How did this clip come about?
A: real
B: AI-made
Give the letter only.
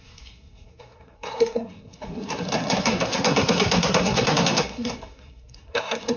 B